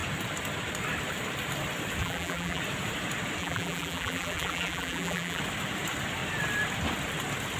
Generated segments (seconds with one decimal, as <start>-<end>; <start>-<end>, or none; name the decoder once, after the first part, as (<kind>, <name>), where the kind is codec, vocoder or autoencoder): 2.0-2.6 (vocoder, BigVGAN v2); 3.4-5.4